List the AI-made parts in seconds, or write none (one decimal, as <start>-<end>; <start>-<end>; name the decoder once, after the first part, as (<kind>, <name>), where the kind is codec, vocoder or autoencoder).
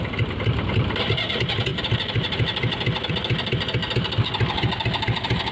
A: none